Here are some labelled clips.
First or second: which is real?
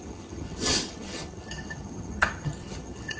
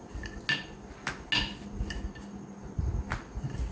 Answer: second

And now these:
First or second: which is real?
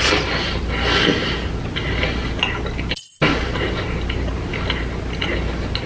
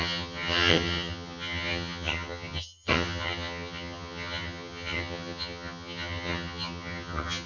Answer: first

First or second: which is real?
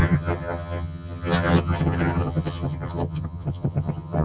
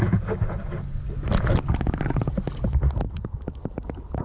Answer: second